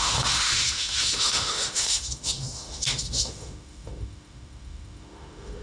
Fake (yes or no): yes